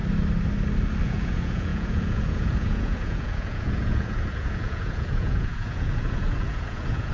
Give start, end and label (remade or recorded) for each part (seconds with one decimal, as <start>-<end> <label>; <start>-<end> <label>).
0.0-1.0 recorded; 1.0-7.1 remade